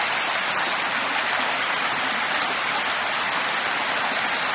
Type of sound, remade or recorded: recorded